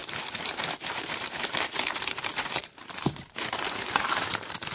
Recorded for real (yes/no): no